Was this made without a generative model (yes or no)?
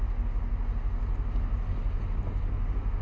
yes